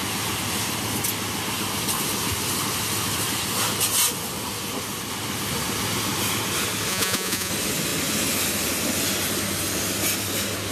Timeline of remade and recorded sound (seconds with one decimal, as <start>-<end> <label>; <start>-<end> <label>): 0.0-6.9 recorded; 6.9-7.5 remade; 7.5-10.7 recorded